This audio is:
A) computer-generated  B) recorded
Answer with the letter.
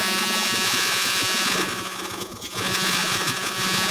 A